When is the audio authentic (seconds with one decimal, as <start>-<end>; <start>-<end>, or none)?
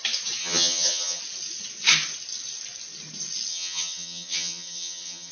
0.0-0.4; 1.2-3.5